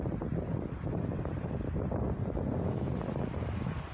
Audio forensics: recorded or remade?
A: recorded